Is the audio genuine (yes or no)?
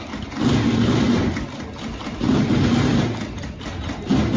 yes